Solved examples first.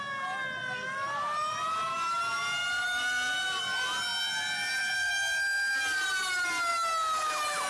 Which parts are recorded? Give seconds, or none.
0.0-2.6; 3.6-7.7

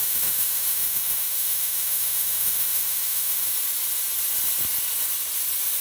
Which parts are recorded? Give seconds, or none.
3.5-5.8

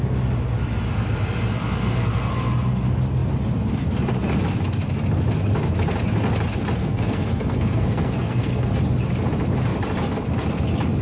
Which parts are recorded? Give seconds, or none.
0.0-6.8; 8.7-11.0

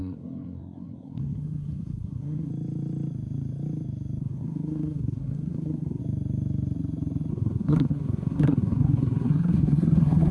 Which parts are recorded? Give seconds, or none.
2.5-4.2; 6.0-7.3

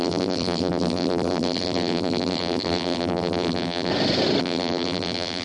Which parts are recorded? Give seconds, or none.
3.9-4.4

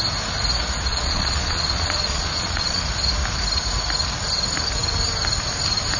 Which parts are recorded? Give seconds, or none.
0.0-0.9; 2.8-6.0

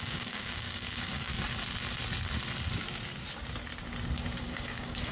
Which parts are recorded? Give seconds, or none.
1.3-4.4

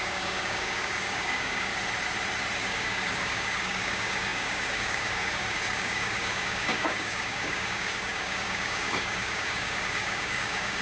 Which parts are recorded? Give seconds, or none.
1.7-2.6